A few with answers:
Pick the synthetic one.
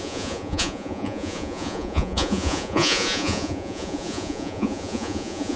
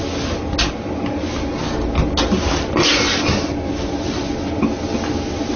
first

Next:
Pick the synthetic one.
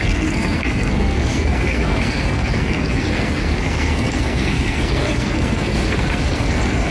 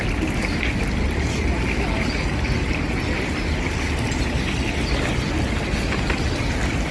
first